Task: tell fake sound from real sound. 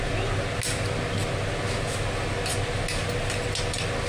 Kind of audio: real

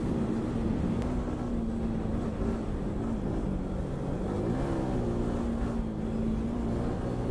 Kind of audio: real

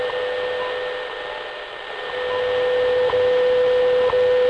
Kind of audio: real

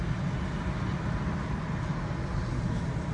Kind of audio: real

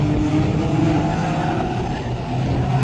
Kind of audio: real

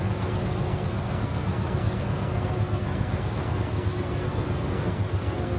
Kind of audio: fake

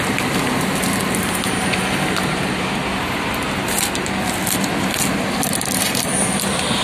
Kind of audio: real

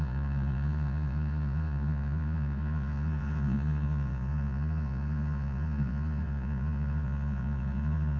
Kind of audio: fake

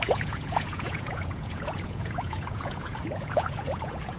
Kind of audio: fake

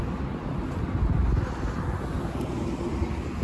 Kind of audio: real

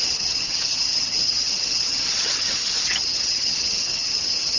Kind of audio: fake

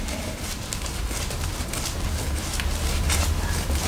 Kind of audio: real